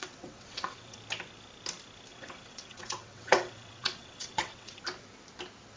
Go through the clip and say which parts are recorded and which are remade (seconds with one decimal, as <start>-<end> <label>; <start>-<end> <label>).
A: 0.0-1.0 remade; 1.0-2.1 recorded; 2.1-4.8 remade; 4.8-5.8 recorded